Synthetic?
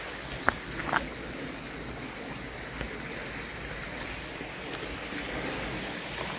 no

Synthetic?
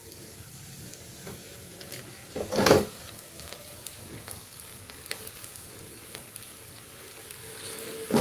yes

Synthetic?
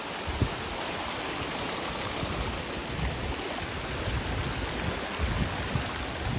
no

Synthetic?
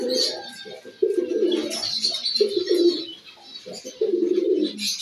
no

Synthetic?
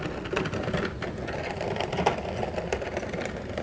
no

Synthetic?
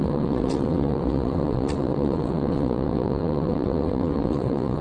yes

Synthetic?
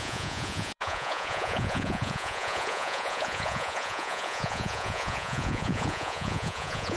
yes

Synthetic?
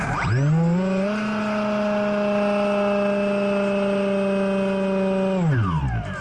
no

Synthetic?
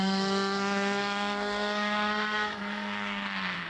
yes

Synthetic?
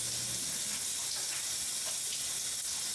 no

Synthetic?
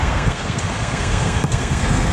yes